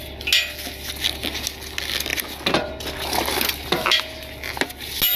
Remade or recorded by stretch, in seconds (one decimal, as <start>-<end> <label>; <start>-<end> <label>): 0.0-5.2 recorded